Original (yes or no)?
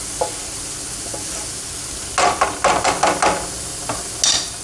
yes